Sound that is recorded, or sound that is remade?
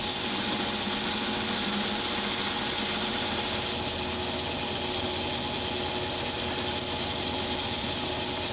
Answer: recorded